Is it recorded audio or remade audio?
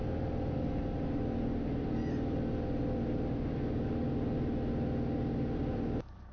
recorded